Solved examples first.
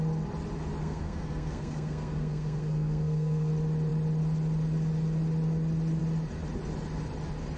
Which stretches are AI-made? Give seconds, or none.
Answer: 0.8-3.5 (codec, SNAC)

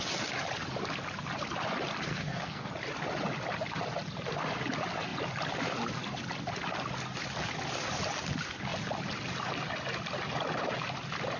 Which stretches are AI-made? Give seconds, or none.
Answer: 2.1-2.7 (codec, SNAC)

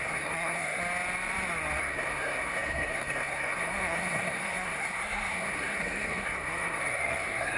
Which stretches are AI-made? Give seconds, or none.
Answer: 0.0-0.8 (codec, SNAC); 1.8-7.6

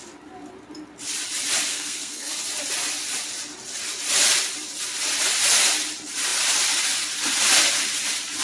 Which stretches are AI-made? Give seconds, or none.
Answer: 1.7-2.3 (codec, SNAC)

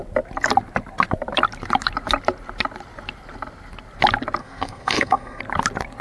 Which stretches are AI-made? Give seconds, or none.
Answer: 4.4-5.4 (codec, SNAC)

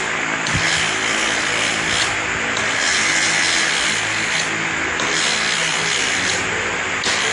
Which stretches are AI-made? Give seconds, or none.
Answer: none

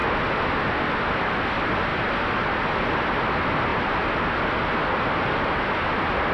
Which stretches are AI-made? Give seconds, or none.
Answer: none